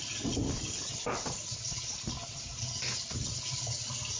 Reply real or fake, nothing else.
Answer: real